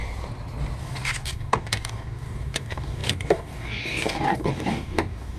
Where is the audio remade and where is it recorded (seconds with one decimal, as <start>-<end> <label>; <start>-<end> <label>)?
0.0-0.8 recorded; 0.8-5.4 remade